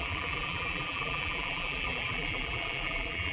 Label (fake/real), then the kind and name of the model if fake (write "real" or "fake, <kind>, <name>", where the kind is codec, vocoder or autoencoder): fake, vocoder, BigVGAN v2